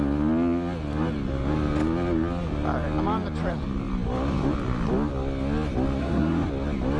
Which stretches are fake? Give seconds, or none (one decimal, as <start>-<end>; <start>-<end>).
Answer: 6.0-6.5

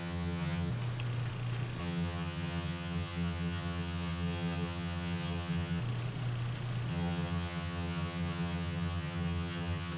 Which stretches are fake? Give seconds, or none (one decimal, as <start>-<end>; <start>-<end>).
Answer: 0.0-0.7; 1.8-5.8; 6.9-10.0

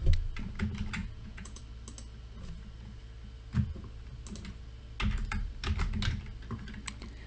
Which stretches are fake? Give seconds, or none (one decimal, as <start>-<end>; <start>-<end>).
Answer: 1.0-1.6

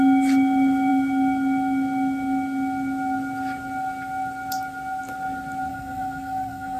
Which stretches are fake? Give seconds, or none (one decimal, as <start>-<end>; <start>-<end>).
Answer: 5.7-6.8